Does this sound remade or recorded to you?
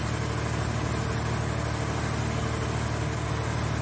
recorded